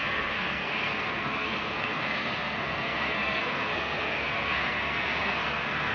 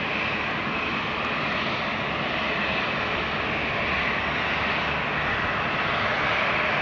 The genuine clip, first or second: second